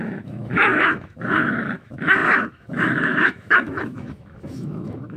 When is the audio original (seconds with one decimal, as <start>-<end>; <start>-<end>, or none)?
none

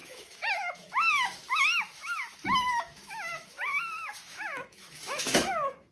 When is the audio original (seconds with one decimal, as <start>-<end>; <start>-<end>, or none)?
none

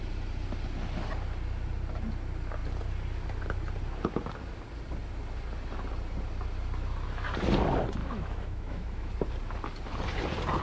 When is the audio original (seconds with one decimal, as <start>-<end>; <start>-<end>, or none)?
0.0-8.0; 9.1-10.6

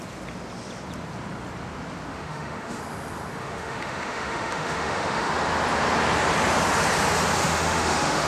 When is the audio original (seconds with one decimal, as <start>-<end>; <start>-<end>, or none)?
0.0-2.1; 2.8-3.4; 5.3-7.4

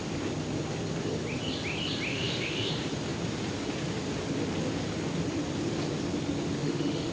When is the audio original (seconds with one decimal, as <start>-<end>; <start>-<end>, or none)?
0.0-2.1; 2.7-6.6

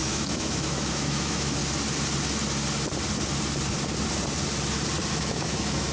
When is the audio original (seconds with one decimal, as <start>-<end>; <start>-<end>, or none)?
1.6-5.1

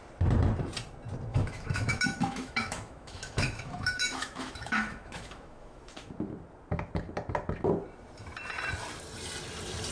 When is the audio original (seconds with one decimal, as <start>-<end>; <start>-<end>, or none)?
0.0-1.3; 6.1-9.9